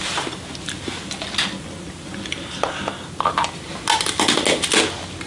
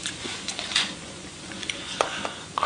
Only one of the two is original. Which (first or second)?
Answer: first